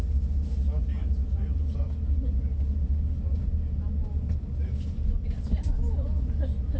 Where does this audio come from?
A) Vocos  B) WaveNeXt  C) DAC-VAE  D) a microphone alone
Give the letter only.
D